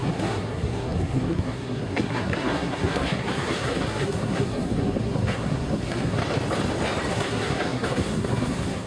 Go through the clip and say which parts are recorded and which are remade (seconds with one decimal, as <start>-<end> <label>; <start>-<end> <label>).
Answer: 0.0-6.2 remade; 6.2-7.1 recorded; 7.1-8.9 remade